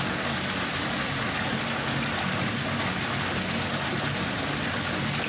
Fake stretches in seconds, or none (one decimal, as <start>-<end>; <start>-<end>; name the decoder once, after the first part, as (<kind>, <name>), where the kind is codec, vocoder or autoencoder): none